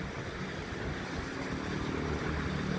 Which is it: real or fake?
real